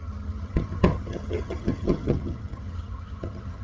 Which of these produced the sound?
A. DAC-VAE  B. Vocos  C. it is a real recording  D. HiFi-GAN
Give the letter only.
D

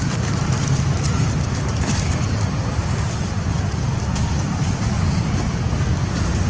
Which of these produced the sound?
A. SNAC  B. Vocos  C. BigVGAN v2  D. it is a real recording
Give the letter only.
C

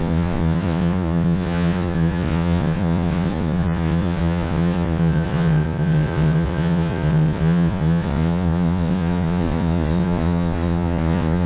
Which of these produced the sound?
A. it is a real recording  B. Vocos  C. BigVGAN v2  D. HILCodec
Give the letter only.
B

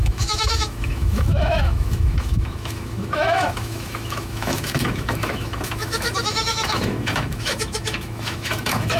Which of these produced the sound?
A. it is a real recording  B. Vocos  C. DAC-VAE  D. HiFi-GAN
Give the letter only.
C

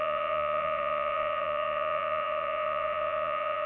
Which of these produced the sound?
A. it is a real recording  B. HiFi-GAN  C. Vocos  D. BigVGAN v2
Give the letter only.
C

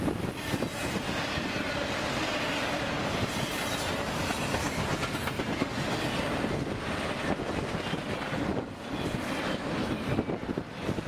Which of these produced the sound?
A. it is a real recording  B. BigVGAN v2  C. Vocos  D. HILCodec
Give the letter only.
A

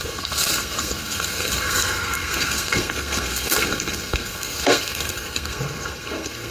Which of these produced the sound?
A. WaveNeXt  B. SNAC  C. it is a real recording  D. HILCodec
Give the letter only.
B